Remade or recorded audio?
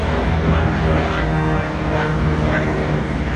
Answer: remade